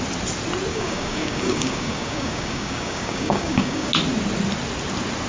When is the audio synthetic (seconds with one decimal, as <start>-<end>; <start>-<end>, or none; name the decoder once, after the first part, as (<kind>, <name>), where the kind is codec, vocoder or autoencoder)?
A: 0.7-3.9 (codec, DAC)

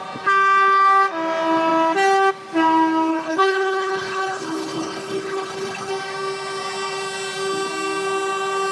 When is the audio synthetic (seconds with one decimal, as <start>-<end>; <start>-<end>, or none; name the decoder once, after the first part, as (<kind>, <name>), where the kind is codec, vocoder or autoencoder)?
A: 3.1-5.9 (codec, HILCodec)

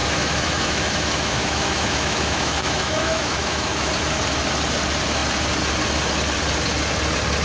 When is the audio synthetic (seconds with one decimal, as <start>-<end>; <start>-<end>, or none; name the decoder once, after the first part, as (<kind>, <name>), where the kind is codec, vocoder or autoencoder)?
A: 0.0-3.9 (autoencoder, DAC-VAE)

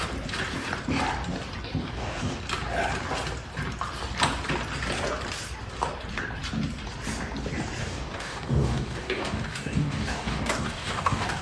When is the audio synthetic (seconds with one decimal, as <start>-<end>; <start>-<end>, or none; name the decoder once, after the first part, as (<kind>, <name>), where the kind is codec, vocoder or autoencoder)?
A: 1.8-2.4 (codec, DAC); 7.8-11.4

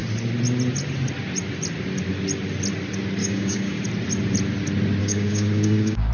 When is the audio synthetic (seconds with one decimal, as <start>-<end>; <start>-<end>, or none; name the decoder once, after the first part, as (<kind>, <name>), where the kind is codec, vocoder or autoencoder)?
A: 3.2-3.8 (codec, DAC); 5.0-6.1